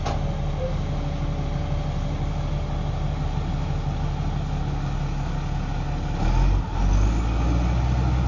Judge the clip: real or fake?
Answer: real